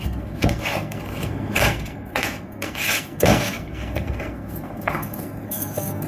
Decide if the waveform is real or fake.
fake